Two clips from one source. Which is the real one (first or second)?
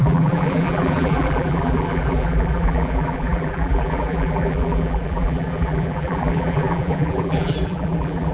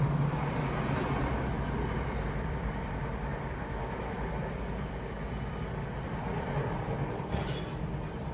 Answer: second